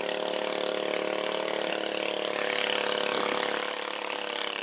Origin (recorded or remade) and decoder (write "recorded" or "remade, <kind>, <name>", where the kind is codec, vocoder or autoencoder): recorded